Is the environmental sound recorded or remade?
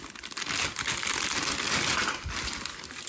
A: recorded